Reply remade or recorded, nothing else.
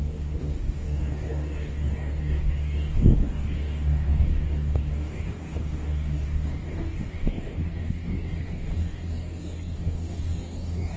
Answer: remade